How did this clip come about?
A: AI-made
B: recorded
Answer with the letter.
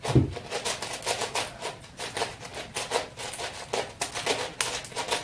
B